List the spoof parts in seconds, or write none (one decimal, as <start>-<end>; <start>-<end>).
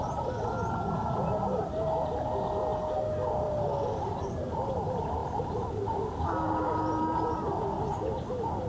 none